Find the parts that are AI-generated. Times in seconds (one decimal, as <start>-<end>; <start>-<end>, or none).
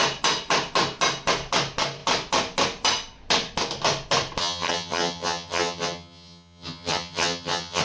4.4-7.8